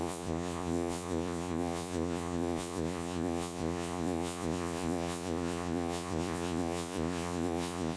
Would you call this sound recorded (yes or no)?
no